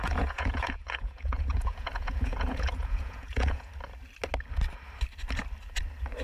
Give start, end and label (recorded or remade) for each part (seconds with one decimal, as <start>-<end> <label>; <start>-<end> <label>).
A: 0.0-3.7 remade; 3.7-6.2 recorded